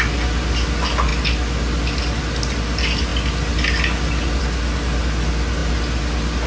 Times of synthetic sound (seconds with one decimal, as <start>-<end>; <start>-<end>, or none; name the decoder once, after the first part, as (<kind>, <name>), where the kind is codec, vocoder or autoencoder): none